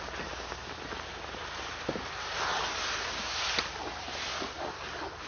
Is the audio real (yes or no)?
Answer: yes